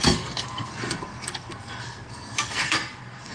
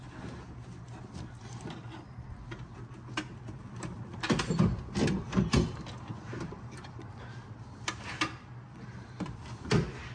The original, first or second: second